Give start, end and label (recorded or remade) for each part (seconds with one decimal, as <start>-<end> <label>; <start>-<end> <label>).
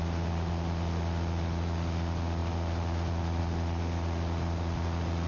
0.0-5.3 recorded